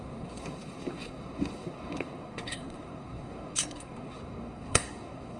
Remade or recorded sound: remade